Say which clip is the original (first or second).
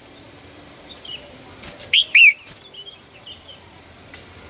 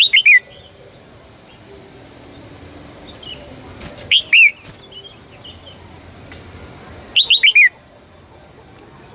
second